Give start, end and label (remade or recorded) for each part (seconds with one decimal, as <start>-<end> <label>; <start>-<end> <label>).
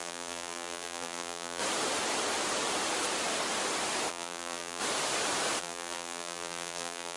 0.0-1.6 remade; 1.6-4.1 recorded; 4.1-4.8 remade; 4.8-5.6 recorded; 5.6-7.2 remade